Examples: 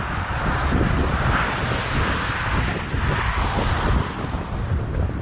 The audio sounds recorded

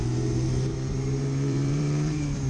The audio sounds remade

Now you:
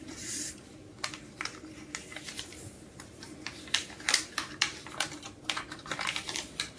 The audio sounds remade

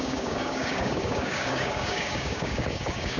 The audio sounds remade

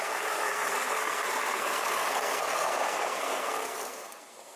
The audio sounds remade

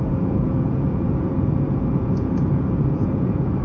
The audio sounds remade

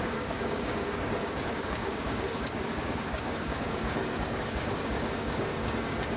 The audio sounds remade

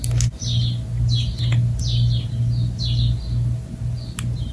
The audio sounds recorded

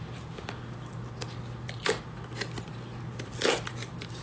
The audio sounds recorded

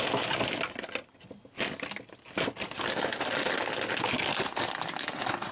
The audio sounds recorded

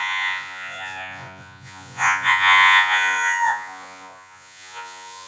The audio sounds remade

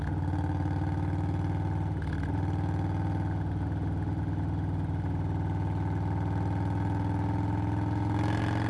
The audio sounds recorded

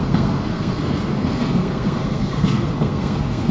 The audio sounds remade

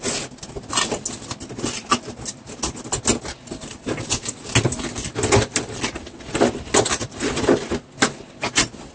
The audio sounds recorded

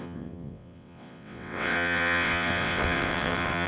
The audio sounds remade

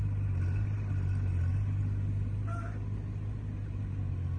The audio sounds recorded